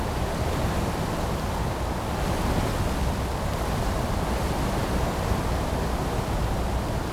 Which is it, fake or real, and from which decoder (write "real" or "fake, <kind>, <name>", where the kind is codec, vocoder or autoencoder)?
real